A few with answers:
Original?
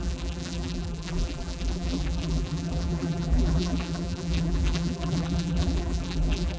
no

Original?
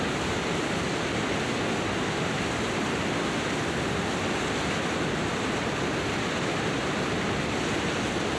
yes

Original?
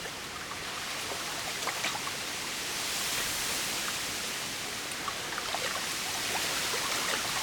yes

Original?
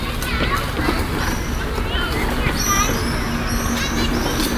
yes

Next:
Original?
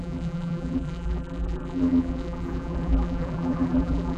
no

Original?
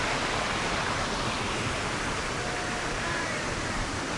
no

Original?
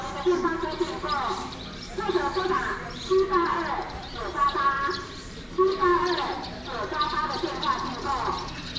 no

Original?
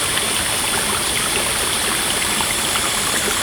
yes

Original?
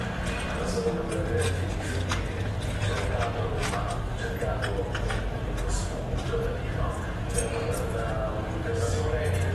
yes